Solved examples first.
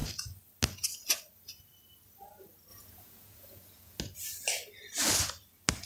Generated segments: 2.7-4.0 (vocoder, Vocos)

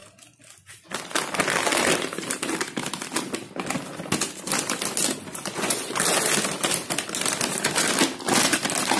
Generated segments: 5.3-6.0 (vocoder, Vocos)